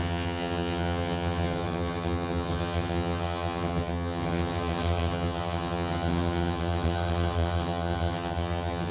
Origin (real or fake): fake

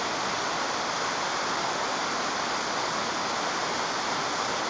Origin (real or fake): real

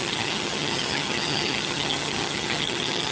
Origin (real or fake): fake